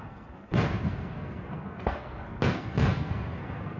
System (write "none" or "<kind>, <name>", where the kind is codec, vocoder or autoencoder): codec, SNAC